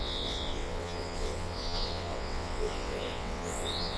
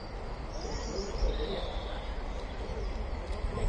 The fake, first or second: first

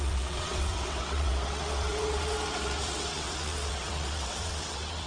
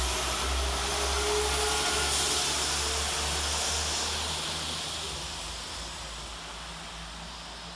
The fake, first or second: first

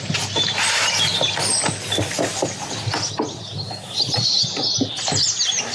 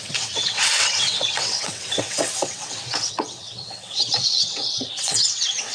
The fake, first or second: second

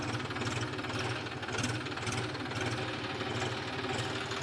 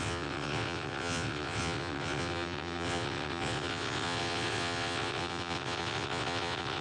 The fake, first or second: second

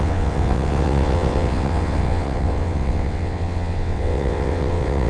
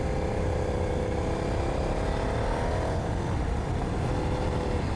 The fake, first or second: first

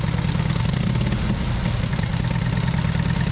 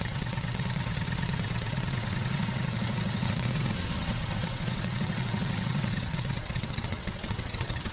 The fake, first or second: second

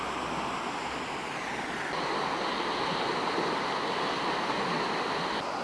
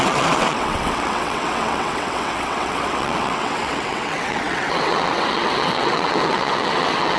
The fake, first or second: second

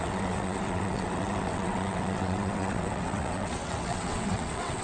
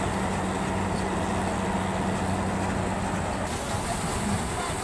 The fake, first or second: first